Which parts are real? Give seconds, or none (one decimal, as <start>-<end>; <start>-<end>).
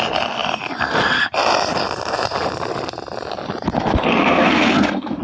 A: 0.0-4.2